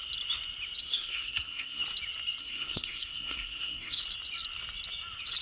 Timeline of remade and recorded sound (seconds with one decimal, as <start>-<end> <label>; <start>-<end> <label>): 0.0-0.8 recorded; 0.8-1.8 remade; 1.8-2.4 recorded; 2.4-4.0 remade; 4.0-5.4 recorded